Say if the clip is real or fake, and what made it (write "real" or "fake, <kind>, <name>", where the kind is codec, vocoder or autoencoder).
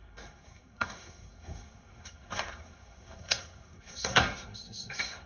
fake, codec, SNAC